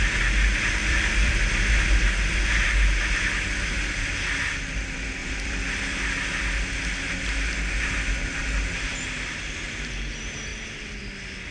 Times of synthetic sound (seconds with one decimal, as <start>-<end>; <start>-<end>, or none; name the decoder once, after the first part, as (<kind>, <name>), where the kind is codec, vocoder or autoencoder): 0.8-1.3 (vocoder, BigVGAN v2); 5.2-6.0; 10.5-11.0